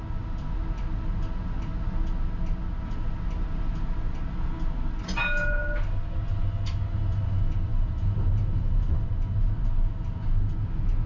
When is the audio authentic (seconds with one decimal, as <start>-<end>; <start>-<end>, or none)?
0.0-11.1